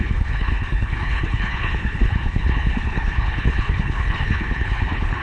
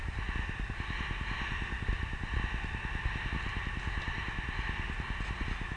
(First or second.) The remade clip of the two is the first